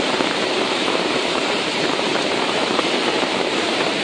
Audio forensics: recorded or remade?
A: remade